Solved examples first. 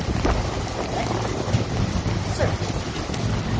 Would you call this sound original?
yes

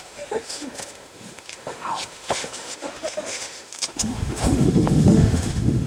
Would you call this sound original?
no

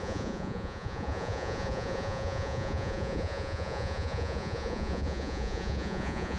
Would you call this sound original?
no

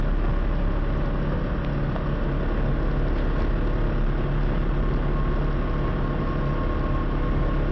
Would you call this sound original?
yes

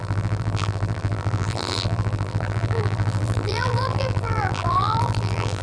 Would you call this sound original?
no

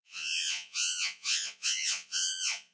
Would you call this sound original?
no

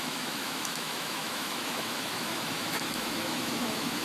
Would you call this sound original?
no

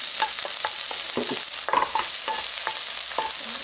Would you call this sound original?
yes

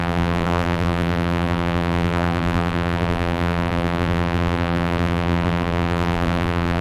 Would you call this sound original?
no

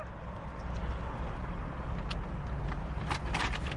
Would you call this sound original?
yes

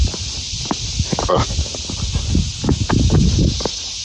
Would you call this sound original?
yes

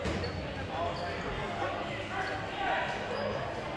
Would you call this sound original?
yes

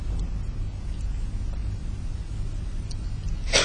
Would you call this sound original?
yes